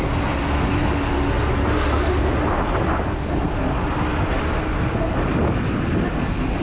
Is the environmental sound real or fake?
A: real